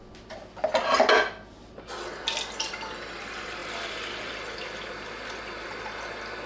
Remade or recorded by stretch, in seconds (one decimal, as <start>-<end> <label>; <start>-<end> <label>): 0.0-6.5 recorded